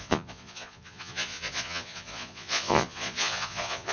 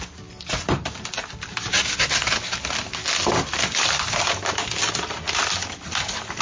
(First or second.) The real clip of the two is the second